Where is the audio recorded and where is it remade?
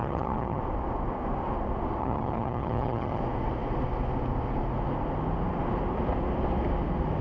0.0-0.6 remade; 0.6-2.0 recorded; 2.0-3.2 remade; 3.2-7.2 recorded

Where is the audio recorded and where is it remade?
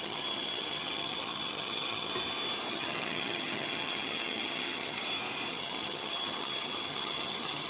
0.0-2.1 remade; 2.1-2.7 recorded; 2.7-5.0 remade; 5.0-5.5 recorded; 5.5-7.7 remade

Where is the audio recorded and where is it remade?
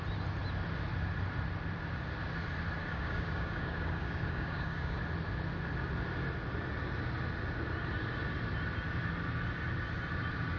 0.0-2.8 recorded; 2.8-5.0 remade; 5.0-10.6 recorded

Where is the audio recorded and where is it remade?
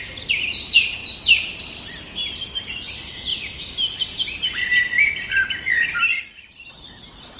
0.0-1.0 remade; 1.0-2.5 recorded; 2.5-3.3 remade; 3.3-5.7 recorded; 5.7-7.4 remade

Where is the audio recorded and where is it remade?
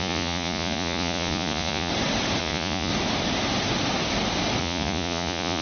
0.0-1.9 remade; 1.9-2.4 recorded; 2.4-2.9 remade; 2.9-4.6 recorded; 4.6-5.6 remade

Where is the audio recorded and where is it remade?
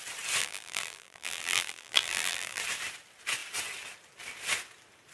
0.0-0.4 recorded; 0.4-2.6 remade; 2.6-5.1 recorded